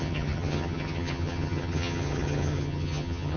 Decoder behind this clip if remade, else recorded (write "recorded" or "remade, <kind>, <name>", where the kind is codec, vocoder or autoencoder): remade, vocoder, HiFi-GAN